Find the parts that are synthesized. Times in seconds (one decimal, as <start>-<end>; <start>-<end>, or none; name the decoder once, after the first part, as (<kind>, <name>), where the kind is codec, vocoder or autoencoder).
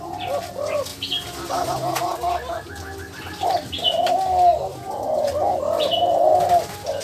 none